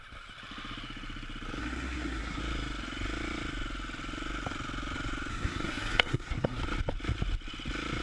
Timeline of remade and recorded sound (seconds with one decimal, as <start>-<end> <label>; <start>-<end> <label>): 0.0-1.6 recorded; 1.6-2.4 remade; 2.4-5.3 recorded; 5.3-6.6 remade; 6.6-8.0 recorded